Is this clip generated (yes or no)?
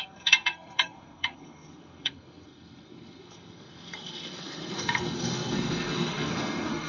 yes